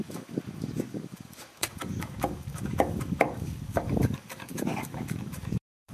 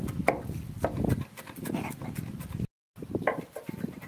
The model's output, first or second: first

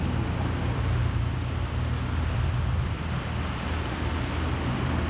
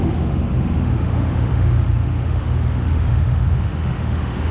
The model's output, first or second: second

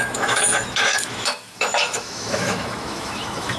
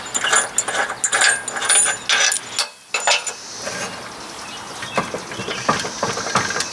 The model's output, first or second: first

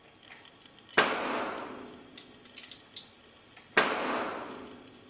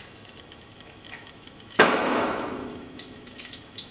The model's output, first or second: second